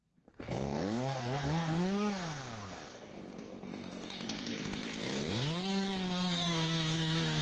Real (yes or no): no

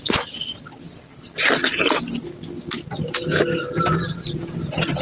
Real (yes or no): yes